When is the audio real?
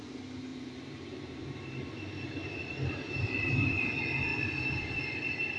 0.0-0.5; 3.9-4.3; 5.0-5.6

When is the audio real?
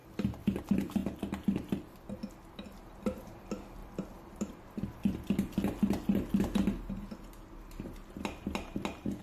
0.0-3.8; 4.5-9.2